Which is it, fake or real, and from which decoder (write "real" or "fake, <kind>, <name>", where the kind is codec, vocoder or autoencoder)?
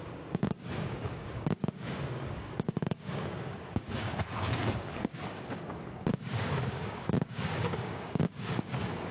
fake, codec, DAC